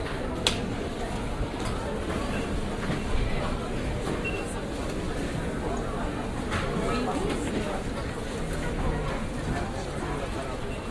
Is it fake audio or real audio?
real